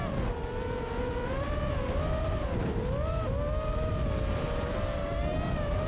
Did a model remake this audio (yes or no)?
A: no